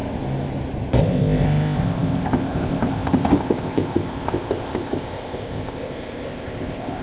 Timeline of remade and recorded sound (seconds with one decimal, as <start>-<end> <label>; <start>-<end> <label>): 0.0-1.0 recorded; 1.0-7.0 remade